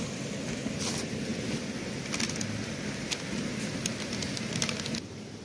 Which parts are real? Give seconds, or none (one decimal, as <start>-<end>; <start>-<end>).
0.0-5.4